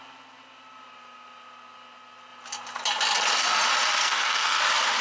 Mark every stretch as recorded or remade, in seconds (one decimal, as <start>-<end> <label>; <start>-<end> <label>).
0.0-4.0 recorded; 4.0-4.6 remade; 4.6-5.0 recorded